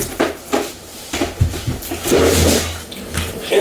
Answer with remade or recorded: recorded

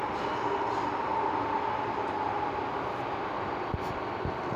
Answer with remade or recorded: recorded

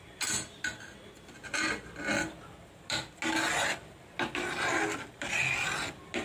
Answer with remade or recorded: recorded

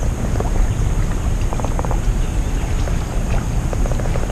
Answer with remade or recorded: recorded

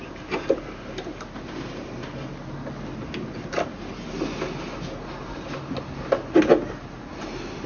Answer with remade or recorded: recorded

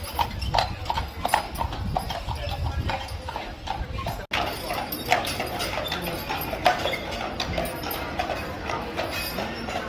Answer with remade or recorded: recorded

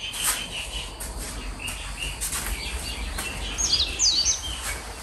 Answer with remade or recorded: recorded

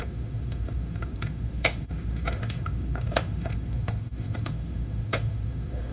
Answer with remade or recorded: remade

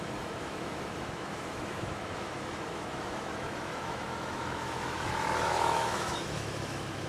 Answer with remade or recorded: remade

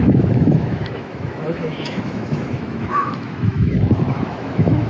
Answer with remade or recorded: remade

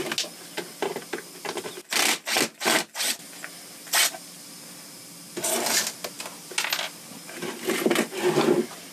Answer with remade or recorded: recorded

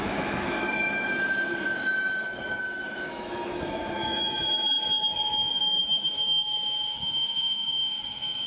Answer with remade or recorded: remade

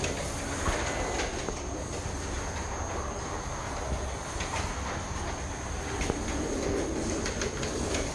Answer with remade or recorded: recorded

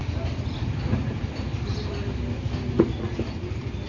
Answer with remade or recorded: recorded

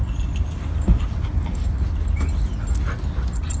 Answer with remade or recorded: recorded